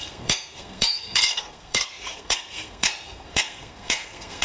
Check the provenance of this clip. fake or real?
fake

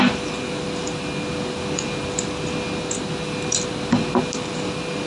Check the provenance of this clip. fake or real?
real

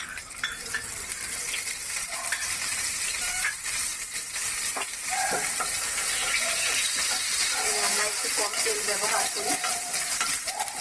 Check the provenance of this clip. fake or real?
fake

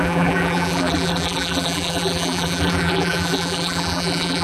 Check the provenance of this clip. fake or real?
fake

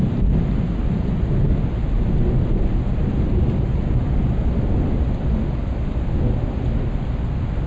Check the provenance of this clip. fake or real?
real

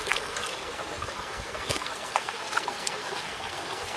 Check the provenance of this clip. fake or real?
fake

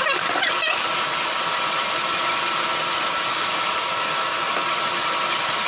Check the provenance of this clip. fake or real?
real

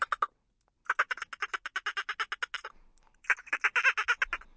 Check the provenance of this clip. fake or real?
real